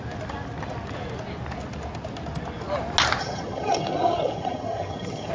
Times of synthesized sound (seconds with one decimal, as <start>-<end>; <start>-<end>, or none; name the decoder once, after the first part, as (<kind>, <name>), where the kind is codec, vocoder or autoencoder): 3.2-5.3 (vocoder, HiFi-GAN)